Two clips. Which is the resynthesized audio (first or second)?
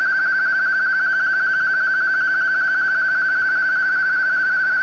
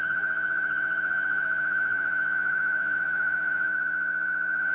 second